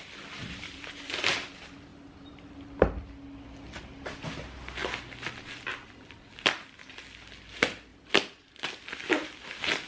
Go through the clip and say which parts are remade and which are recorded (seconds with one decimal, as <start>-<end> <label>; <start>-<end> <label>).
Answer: 0.0-0.4 recorded; 0.4-1.1 remade; 1.1-1.9 recorded; 1.9-2.5 remade; 2.5-7.9 recorded; 7.9-8.6 remade; 8.6-9.9 recorded